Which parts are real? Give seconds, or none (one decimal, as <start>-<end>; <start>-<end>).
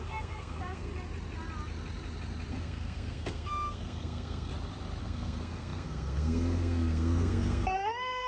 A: 0.9-2.5; 4.5-5.0